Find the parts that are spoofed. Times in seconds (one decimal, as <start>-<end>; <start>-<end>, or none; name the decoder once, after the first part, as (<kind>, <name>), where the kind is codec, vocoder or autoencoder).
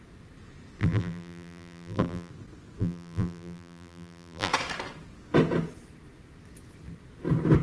0.8-2.3 (vocoder, BigVGAN v2); 2.8-4.5